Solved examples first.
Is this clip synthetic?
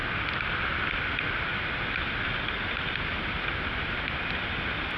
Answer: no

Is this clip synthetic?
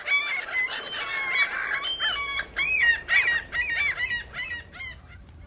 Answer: no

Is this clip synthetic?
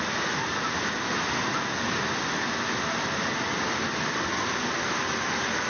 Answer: no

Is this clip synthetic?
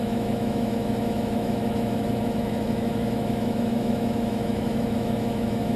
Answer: yes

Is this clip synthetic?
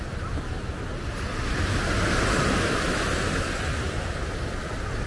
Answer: no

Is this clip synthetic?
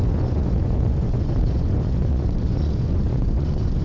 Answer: yes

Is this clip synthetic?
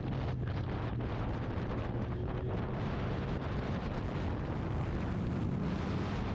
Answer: no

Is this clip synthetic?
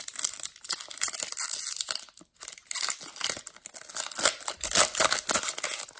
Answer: no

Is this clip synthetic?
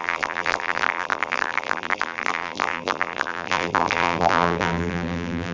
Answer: yes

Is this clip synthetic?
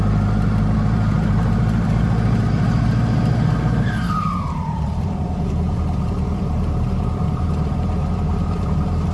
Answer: yes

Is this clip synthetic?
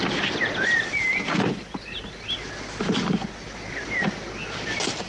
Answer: no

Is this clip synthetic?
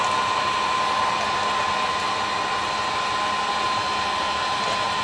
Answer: no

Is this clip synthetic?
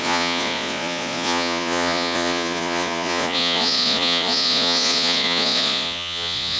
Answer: yes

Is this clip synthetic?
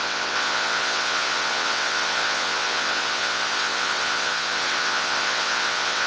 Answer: yes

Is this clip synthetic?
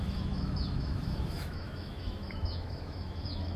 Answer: yes